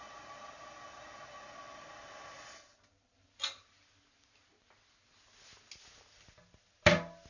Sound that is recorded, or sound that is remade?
recorded